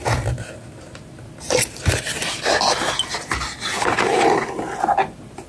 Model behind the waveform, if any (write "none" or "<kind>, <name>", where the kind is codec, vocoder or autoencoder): none